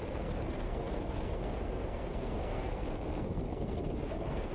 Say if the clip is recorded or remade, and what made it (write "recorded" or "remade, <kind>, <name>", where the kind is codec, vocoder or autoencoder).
remade, codec, SNAC